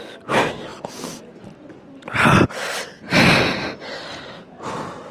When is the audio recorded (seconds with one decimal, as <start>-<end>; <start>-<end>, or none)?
0.0-5.1